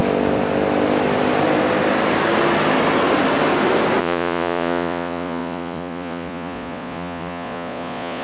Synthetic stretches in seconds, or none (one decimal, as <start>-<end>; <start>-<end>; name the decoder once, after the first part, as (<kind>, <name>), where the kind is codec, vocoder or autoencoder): 4.0-8.2 (vocoder, Vocos)

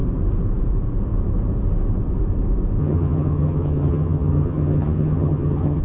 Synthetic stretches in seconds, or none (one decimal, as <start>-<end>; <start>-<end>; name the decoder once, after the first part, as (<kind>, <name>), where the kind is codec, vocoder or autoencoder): 2.8-5.8 (vocoder, HiFi-GAN)

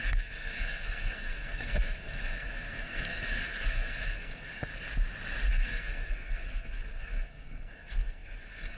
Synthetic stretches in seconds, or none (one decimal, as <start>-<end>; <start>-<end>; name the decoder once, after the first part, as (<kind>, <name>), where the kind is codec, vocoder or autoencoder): 0.0-4.7 (codec, SNAC); 5.5-8.8

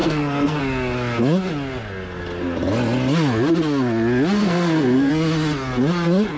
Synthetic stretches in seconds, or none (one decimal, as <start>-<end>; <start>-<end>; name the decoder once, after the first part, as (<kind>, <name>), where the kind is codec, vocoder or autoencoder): 0.0-0.6 (codec, SNAC); 4.4-5.1

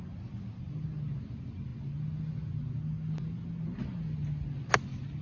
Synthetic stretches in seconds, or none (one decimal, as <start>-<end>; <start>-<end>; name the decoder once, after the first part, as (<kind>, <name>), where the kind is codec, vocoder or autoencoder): none

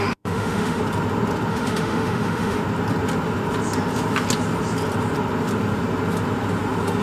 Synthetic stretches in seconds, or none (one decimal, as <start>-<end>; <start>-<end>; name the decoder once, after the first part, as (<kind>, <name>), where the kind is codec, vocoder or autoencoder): 0.0-0.8 (autoencoder, DAC-VAE); 1.5-2.6

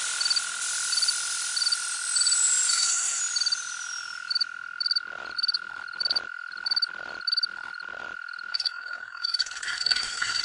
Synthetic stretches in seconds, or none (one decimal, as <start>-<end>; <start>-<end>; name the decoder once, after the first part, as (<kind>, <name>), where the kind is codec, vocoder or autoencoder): 2.7-3.2 (codec, SNAC); 8.5-10.4